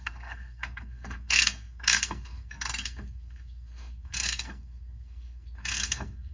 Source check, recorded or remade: remade